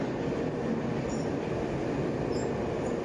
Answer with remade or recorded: recorded